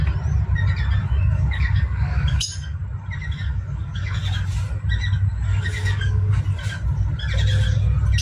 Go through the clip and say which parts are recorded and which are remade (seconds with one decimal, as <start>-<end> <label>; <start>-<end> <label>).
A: 0.0-1.0 recorded; 1.0-2.8 remade; 2.8-3.2 recorded; 3.2-4.2 remade; 4.2-5.5 recorded; 5.5-6.4 remade; 6.4-8.2 recorded